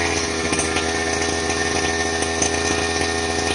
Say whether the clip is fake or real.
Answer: real